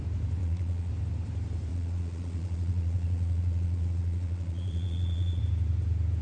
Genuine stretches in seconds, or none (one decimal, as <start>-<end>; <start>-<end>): 0.0-0.4; 0.9-1.7; 5.4-6.2

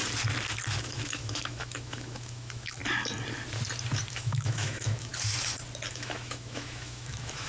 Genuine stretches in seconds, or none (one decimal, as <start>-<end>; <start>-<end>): 0.0-0.8; 2.8-4.1; 5.1-5.9

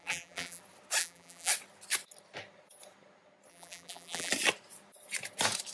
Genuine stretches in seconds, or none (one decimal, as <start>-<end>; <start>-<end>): 0.6-1.0; 1.5-3.5; 4.3-5.7

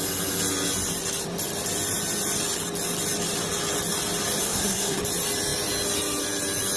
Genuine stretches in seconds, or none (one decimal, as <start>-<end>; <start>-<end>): 0.0-4.4; 5.0-6.8

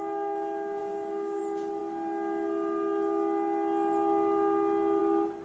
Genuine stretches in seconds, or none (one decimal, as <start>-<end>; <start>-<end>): 0.0-0.8; 1.4-5.4

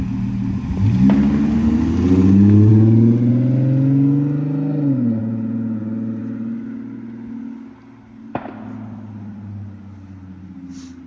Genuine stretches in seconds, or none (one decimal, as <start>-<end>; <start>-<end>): 0.0-5.2; 5.8-11.1